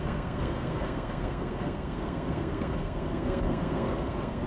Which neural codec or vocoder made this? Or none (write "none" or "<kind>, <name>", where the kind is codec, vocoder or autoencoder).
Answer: codec, SNAC